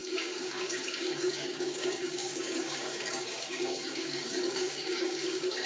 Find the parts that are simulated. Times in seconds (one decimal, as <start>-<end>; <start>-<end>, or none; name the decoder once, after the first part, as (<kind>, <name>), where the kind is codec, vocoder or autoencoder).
0.0-5.7 (codec, DAC)